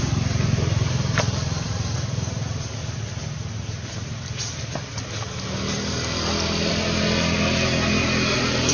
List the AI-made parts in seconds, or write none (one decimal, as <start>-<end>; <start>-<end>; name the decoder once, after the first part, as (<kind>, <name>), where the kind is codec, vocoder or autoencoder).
none